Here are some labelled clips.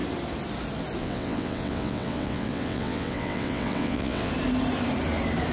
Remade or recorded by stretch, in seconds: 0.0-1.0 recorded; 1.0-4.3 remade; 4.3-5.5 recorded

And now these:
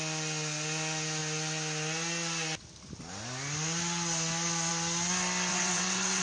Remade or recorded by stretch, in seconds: 0.0-5.5 recorded; 5.5-6.2 remade

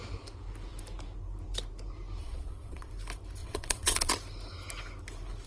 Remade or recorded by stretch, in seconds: 0.0-2.2 recorded; 2.2-2.9 remade; 2.9-3.4 recorded; 3.4-4.1 remade; 4.1-5.5 recorded